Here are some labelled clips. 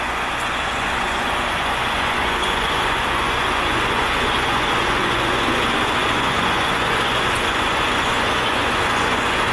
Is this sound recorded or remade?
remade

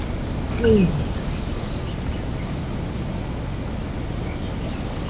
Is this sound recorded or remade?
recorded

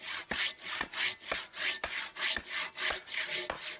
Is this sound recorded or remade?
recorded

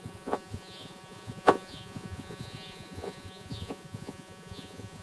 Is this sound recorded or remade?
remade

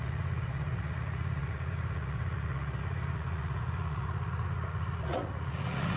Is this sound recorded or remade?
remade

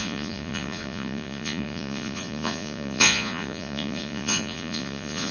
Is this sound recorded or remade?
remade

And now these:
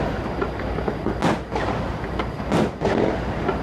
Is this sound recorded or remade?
recorded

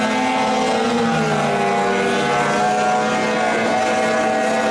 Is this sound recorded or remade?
recorded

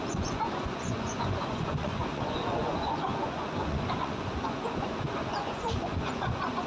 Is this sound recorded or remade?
remade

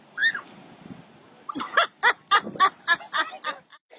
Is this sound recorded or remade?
recorded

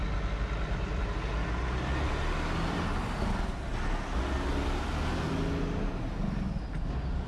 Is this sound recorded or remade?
recorded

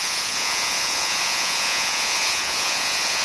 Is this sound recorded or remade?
remade